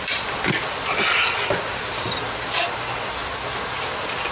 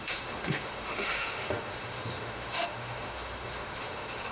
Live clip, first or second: first